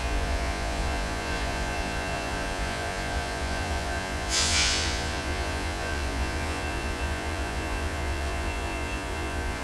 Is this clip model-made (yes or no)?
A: yes